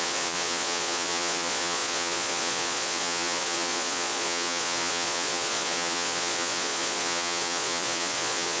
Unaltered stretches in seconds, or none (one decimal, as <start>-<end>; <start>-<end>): none